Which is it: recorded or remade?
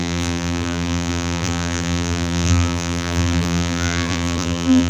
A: remade